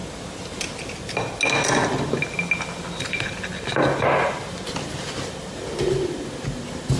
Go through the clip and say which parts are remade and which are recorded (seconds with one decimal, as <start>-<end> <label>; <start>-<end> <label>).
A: 0.0-7.0 recorded